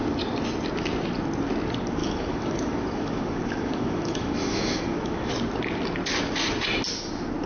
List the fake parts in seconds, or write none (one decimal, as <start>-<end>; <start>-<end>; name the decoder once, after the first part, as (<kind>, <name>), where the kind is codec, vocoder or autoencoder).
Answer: 2.0-5.3 (autoencoder, DAC-VAE)